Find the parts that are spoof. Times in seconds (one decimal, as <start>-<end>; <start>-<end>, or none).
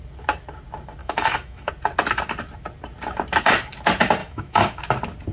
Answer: 1.0-1.7; 4.2-4.8